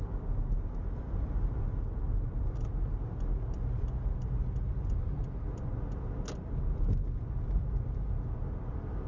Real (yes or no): yes